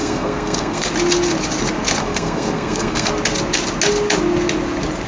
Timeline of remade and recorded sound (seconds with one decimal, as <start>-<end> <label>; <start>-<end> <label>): 0.0-0.9 remade; 0.9-2.0 recorded; 2.0-3.1 remade; 3.1-5.1 recorded